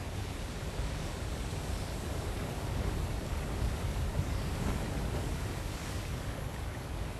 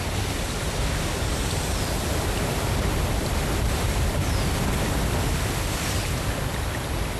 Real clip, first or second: second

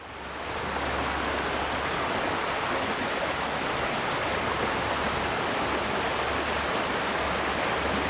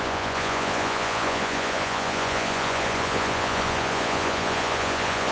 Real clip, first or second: first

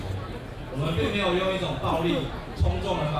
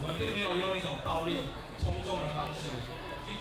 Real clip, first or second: first